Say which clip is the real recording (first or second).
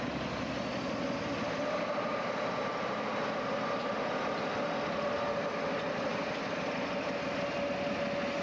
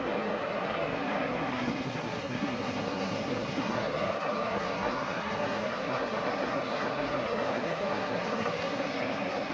first